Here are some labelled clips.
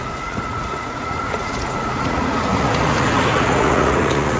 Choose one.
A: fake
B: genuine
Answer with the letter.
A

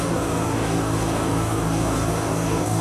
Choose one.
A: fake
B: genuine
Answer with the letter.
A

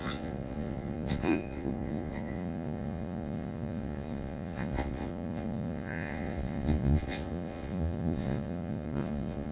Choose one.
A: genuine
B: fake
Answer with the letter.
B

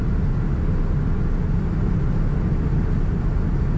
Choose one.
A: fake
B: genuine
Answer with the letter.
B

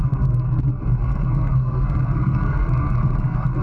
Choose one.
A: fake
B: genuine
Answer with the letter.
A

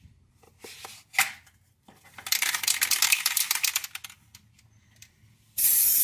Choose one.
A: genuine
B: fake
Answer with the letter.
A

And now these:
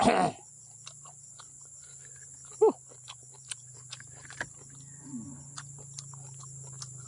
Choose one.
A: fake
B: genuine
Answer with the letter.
B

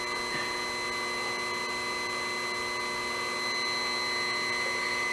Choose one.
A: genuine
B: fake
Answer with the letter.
A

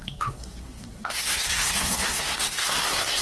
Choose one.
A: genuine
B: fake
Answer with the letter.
B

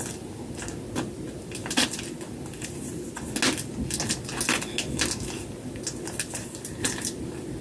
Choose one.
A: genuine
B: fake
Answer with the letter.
A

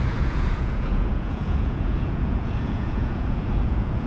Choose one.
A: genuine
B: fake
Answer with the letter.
B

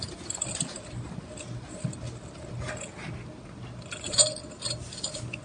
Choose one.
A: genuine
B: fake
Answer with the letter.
A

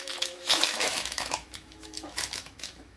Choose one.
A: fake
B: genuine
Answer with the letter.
A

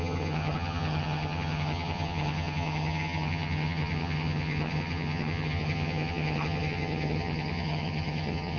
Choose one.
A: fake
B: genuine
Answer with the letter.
A